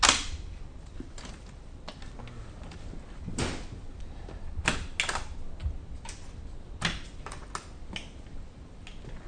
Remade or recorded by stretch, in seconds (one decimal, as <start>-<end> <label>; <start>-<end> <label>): 0.0-9.3 recorded

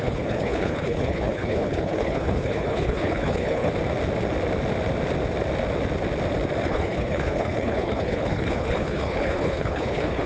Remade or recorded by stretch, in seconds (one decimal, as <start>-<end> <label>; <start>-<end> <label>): 0.0-3.7 remade; 3.7-6.6 recorded; 6.6-10.3 remade

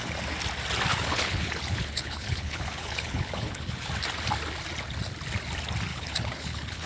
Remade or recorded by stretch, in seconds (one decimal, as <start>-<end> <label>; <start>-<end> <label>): 0.0-0.9 recorded; 0.9-3.9 remade; 3.9-5.9 recorded; 5.9-6.9 remade

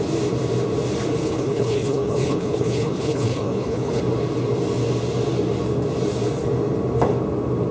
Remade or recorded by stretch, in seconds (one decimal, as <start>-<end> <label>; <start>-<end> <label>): 0.0-1.2 recorded; 1.2-4.0 remade; 4.0-7.7 recorded